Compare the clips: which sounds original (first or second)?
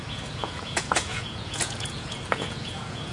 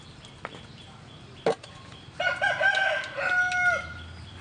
second